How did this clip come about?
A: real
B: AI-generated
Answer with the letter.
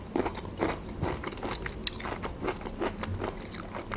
A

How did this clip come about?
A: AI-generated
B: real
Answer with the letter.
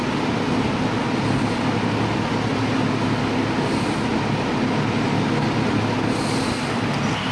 B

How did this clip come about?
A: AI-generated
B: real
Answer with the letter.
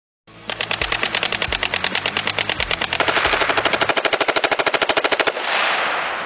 B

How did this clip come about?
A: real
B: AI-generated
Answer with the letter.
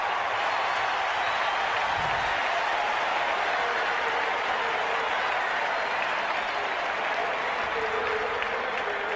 A